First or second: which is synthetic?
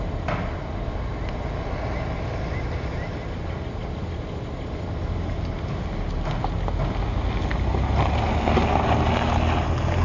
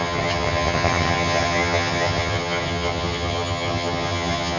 second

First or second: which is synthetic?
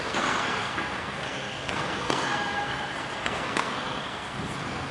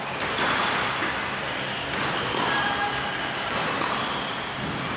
first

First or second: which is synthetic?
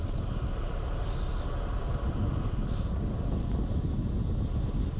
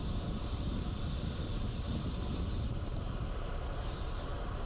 second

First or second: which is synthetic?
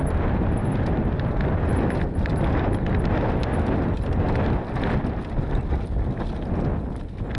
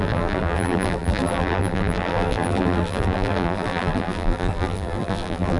second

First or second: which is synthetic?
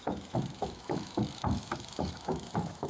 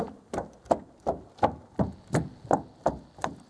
first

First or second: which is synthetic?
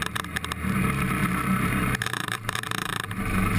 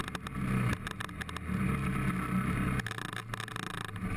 first